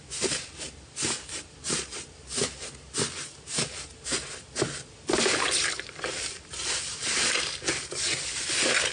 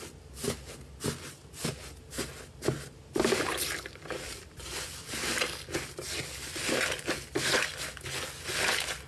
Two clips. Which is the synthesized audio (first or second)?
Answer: first